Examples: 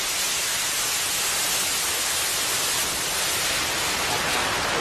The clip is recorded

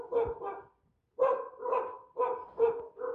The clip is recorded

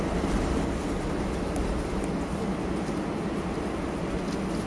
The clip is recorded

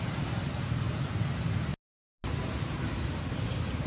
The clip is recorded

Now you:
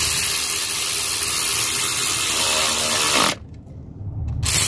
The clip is recorded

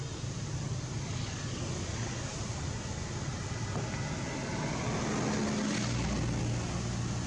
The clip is recorded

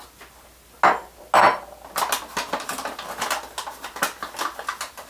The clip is recorded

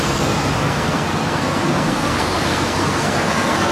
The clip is remade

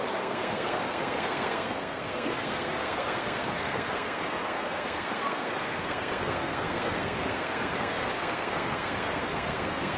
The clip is remade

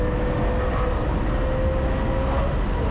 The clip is recorded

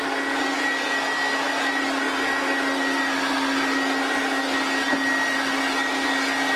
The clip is recorded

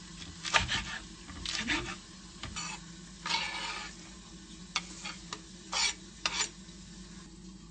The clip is recorded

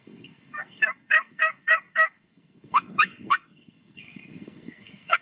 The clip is remade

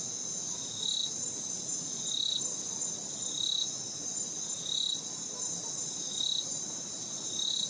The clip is recorded